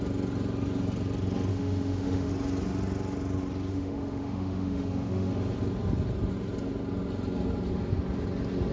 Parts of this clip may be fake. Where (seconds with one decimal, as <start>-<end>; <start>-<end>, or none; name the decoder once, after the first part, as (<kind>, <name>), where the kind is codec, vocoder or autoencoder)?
1.5-2.3 (autoencoder, DAC-VAE); 3.7-5.3